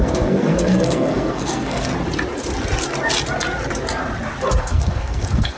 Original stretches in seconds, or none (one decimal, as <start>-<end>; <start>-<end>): 1.9-4.6